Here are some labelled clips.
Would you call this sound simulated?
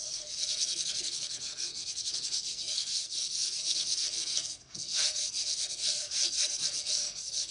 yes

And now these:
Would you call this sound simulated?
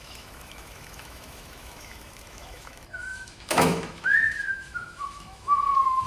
yes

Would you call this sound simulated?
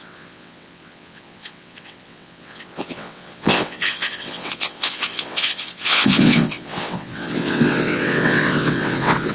yes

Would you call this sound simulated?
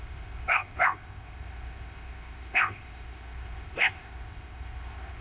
yes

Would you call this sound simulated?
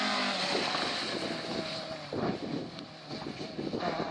no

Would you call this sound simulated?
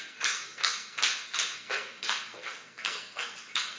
yes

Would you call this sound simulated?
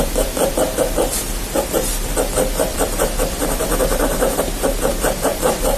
yes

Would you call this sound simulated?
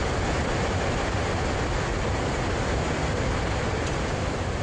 no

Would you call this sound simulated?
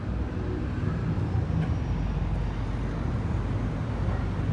no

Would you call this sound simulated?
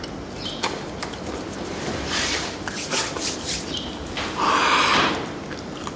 no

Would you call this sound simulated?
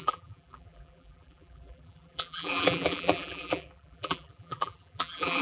yes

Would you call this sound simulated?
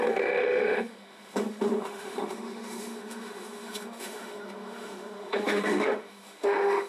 yes